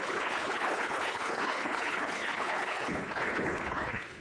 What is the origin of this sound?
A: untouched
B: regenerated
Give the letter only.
B